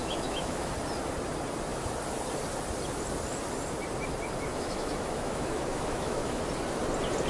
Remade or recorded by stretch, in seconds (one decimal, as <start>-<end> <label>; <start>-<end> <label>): 0.0-0.7 remade; 0.7-4.5 recorded; 4.5-6.4 remade; 6.4-7.3 recorded